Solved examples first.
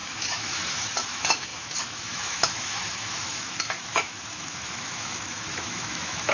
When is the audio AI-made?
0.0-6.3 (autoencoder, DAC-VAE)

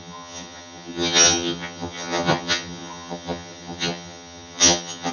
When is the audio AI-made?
0.0-5.1 (vocoder, HiFi-GAN)

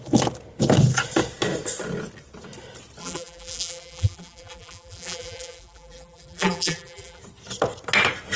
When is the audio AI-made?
3.0-7.2 (vocoder, BigVGAN v2)

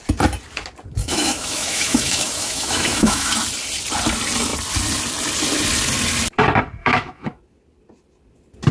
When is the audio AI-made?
1.0-3.3 (autoencoder, DAC-VAE); 6.8-7.4

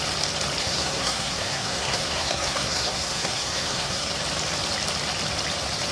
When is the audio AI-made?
0.6-4.1 (codec, SNAC)